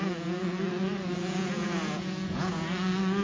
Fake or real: fake